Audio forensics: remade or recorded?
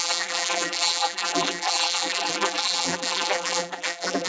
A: remade